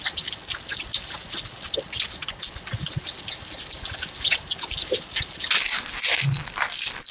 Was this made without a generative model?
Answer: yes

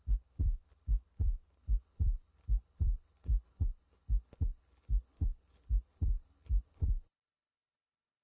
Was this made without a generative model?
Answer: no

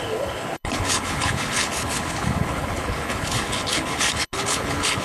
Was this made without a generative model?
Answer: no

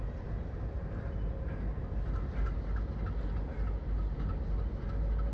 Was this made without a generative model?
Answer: yes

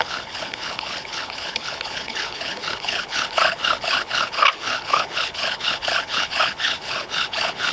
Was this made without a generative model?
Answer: no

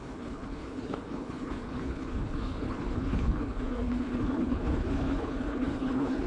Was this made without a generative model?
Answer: no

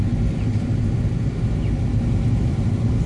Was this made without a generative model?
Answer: yes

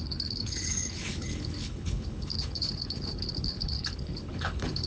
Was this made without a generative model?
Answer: no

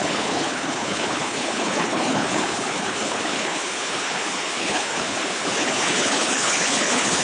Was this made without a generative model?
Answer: no